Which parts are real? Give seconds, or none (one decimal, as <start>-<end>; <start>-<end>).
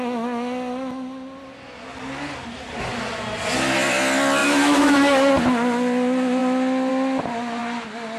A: 0.0-4.4; 5.3-8.2